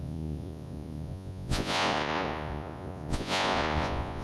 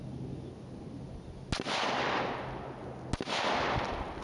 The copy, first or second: first